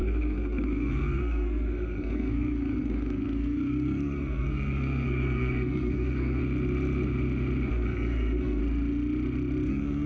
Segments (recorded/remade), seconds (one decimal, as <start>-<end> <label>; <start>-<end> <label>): 0.0-6.4 remade; 6.4-7.7 recorded; 7.7-8.6 remade; 8.6-9.7 recorded; 9.7-10.1 remade